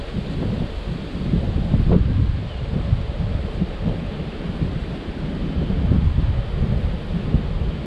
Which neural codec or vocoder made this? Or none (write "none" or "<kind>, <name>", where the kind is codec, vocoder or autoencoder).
none